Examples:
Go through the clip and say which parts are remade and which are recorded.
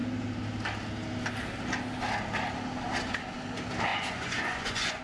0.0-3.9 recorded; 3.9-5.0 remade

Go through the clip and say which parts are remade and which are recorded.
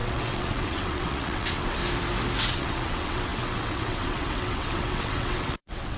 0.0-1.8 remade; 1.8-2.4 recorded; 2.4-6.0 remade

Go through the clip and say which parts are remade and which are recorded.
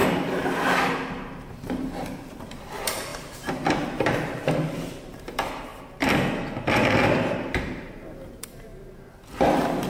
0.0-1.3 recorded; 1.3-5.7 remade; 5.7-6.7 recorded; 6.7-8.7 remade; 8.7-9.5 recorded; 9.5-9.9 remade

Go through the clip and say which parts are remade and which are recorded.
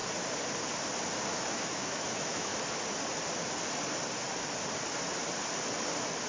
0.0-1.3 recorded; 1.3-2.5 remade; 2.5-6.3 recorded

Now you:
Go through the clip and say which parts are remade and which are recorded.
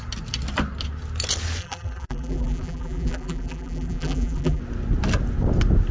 0.0-1.6 recorded; 1.6-4.6 remade; 4.6-5.9 recorded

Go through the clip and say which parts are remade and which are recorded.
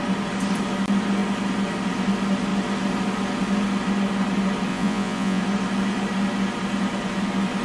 0.0-4.7 recorded; 4.7-5.4 remade; 5.4-7.6 recorded